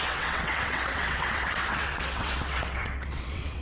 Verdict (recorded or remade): remade